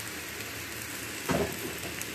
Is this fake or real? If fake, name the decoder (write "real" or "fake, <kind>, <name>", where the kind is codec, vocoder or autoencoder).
real